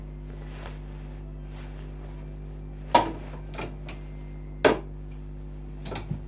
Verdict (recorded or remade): recorded